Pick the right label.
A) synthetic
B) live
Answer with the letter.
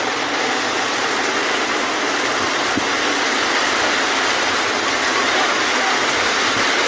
B